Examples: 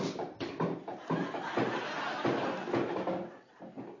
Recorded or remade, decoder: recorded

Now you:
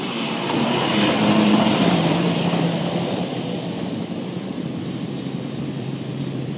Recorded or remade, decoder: remade, vocoder, BigVGAN v2